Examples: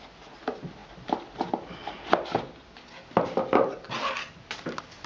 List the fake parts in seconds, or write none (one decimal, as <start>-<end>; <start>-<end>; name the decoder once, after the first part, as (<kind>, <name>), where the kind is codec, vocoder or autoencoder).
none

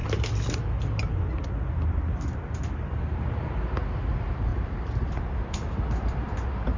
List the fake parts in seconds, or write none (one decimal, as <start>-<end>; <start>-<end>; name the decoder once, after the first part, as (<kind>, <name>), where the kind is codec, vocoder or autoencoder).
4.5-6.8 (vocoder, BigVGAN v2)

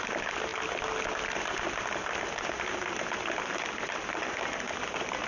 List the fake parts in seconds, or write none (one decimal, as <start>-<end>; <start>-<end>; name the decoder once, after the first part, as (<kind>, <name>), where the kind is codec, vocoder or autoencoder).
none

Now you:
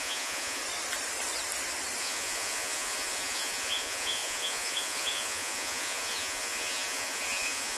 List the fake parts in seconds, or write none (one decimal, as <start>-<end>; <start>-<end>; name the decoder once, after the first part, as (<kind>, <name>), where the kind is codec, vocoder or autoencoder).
0.0-0.6 (vocoder, Vocos); 2.0-7.8

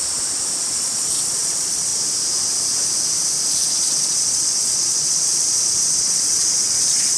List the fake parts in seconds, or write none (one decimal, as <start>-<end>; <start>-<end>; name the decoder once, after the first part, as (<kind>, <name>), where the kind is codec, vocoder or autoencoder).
0.8-1.9 (vocoder, Vocos); 3.7-7.2

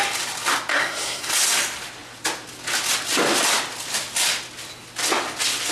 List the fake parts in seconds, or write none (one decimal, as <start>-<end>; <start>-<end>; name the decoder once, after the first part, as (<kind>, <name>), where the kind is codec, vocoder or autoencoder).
0.7-1.3 (codec, SNAC)

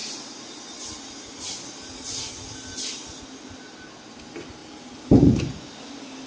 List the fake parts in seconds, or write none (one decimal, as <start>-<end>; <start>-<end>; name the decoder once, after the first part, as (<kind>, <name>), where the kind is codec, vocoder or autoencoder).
none